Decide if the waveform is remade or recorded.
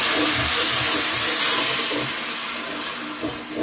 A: recorded